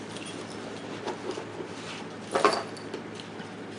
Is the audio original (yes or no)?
yes